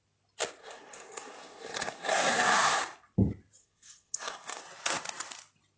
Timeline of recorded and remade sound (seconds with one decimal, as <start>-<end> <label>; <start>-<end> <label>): 0.0-0.6 recorded; 0.6-2.8 remade; 2.8-3.6 recorded; 3.6-4.6 remade; 4.6-5.8 recorded